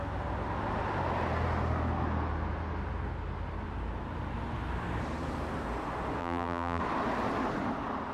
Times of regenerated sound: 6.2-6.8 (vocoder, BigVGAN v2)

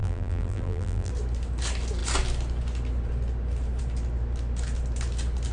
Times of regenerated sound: 0.0-1.1 (vocoder, BigVGAN v2)

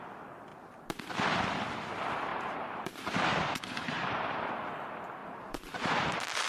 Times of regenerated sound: 2.3-4.5 (vocoder, BigVGAN v2); 5.2-6.5

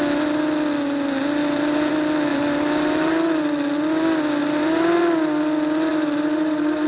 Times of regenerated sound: 1.4-1.9 (vocoder, BigVGAN v2); 2.3-3.1; 4.4-5.0; 5.9-6.9

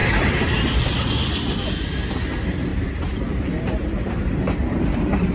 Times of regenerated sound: 0.0-1.1 (vocoder, BigVGAN v2); 2.7-4.4

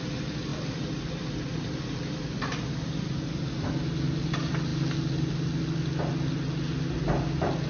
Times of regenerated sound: 0.5-1.8 (vocoder, BigVGAN v2)